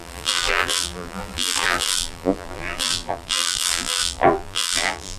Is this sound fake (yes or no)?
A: yes